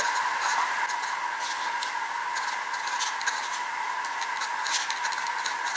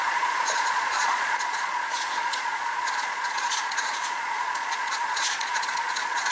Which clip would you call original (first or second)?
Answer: first